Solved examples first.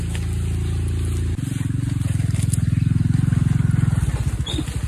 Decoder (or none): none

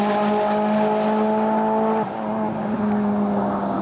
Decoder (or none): none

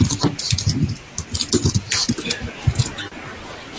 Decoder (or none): none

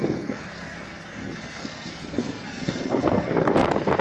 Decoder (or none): codec, SNAC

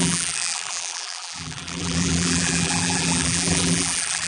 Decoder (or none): vocoder, BigVGAN v2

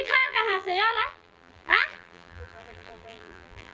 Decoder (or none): vocoder, BigVGAN v2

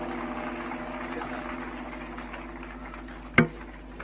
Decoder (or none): none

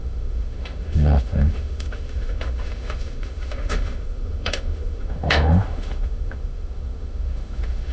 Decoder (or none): autoencoder, DAC-VAE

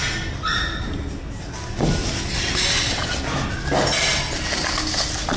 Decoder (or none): none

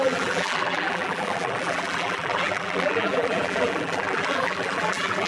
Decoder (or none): vocoder, BigVGAN v2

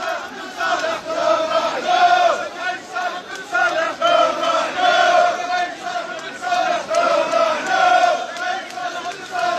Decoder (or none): vocoder, BigVGAN v2